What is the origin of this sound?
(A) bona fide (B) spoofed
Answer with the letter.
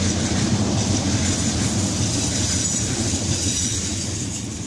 A